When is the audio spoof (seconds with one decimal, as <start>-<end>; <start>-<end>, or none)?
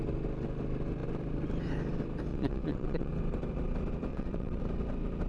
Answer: 2.3-3.1; 4.1-4.6